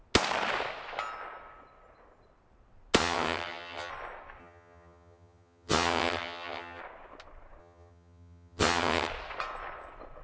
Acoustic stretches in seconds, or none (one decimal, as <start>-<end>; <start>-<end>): 0.0-3.0; 3.9-4.4; 6.8-7.6; 9.1-10.2